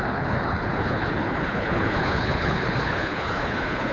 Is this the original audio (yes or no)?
no